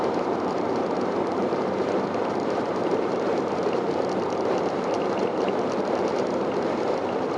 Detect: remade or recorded remade